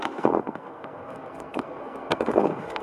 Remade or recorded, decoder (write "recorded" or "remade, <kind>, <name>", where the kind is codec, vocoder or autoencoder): remade, codec, SNAC